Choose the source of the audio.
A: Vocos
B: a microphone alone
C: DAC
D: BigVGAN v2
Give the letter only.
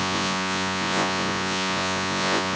A